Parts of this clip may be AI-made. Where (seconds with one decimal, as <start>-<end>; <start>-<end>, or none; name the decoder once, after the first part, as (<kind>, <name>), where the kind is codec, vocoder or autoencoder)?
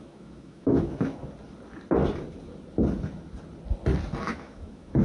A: 0.0-1.2 (autoencoder, DAC-VAE); 4.2-5.0